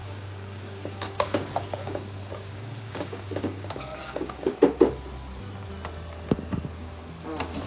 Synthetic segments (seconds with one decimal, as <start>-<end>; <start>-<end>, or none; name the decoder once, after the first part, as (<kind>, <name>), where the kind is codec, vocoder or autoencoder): 0.0-4.6 (codec, DAC)